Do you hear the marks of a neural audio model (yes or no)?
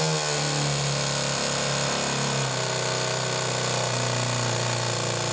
no